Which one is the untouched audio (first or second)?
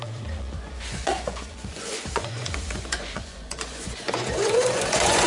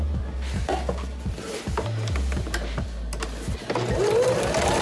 second